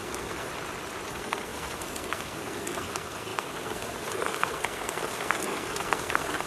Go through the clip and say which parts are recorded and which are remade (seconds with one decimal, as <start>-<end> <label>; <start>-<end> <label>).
0.0-0.5 remade; 0.5-1.1 recorded; 1.1-6.5 remade